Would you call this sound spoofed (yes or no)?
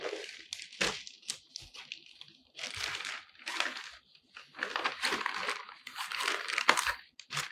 no